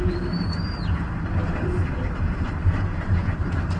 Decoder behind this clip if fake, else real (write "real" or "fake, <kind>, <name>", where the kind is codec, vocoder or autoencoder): fake, vocoder, BigVGAN v2